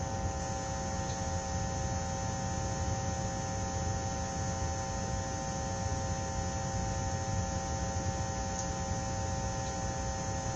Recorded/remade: recorded